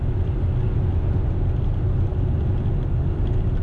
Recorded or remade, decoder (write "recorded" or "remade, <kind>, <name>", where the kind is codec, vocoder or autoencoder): recorded